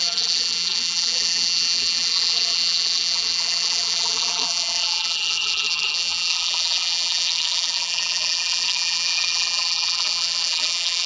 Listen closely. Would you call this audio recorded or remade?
remade